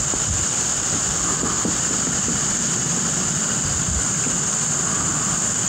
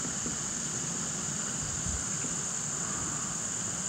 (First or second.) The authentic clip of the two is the second